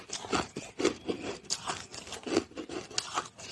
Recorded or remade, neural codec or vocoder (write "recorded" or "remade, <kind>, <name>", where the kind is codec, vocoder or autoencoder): recorded